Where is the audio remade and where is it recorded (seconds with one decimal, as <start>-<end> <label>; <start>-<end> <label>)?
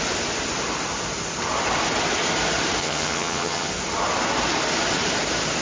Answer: 0.0-2.8 recorded; 2.8-3.7 remade; 3.7-5.6 recorded